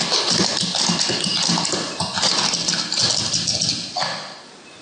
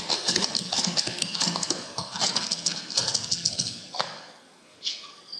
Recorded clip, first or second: first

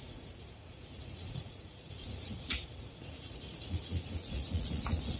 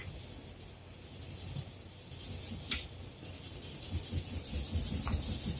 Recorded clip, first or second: second